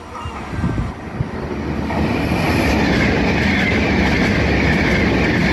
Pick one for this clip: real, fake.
real